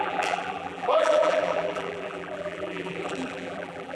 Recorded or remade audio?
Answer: remade